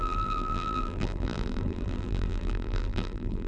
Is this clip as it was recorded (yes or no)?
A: no